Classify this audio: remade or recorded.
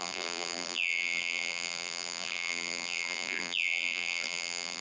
remade